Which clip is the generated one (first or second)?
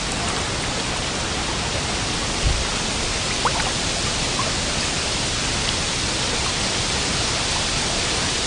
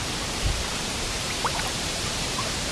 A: second